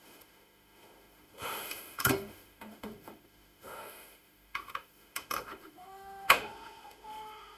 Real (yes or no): no